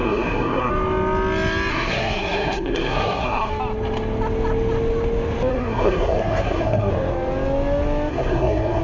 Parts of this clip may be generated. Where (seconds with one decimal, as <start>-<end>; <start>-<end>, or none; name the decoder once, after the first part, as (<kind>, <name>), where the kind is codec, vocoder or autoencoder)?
0.0-0.7 (codec, SNAC); 1.7-3.5; 5.5-6.9; 8.1-8.8